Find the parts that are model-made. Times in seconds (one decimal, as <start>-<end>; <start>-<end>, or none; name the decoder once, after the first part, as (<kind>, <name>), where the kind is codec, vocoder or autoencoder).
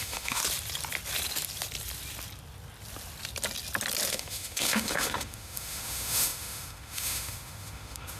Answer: 0.0-0.4 (autoencoder, DAC-VAE); 4.1-8.2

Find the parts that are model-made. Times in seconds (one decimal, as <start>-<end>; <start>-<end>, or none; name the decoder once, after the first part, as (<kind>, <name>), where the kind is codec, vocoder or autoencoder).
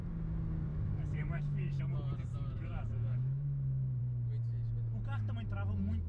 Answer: 0.7-1.8 (autoencoder, DAC-VAE); 2.3-4.0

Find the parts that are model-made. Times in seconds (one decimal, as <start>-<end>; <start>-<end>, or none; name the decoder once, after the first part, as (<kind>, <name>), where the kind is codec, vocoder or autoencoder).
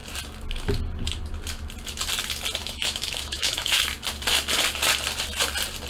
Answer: 2.6-3.8 (autoencoder, DAC-VAE)